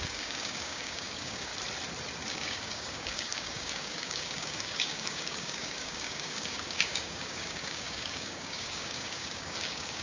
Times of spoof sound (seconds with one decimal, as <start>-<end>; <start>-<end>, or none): 0.0-1.5; 2.3-10.0